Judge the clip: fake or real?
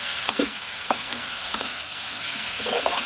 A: fake